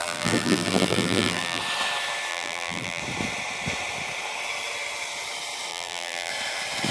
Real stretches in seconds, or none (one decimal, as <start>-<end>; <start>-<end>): 1.6-2.3; 3.0-5.7; 6.3-6.9